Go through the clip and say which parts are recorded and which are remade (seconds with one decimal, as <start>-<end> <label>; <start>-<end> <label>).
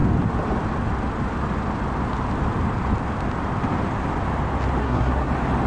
0.0-4.8 recorded; 4.8-5.3 remade; 5.3-5.7 recorded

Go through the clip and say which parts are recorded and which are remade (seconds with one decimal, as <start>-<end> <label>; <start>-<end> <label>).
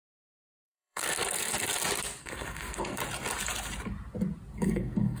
0.0-1.5 remade; 1.5-2.2 recorded; 2.2-3.0 remade; 3.0-4.6 recorded; 4.6-5.2 remade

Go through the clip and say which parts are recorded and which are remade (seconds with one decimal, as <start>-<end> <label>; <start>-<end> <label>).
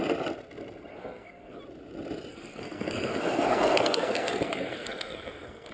0.0-0.9 recorded; 0.9-1.6 remade; 1.6-2.3 recorded; 2.3-5.7 remade